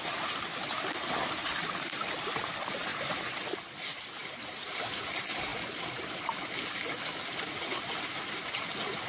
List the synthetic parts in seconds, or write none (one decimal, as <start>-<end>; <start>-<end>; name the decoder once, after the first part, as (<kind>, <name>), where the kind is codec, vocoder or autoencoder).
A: none